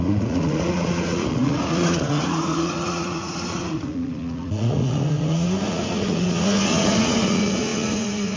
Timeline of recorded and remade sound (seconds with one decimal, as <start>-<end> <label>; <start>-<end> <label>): 0.0-8.4 remade